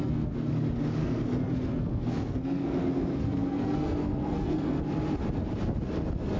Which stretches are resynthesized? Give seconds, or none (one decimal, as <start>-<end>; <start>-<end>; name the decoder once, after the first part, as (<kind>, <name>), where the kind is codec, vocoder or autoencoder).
0.0-0.5 (codec, SNAC); 1.0-4.8